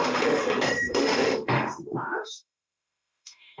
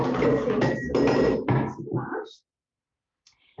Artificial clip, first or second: first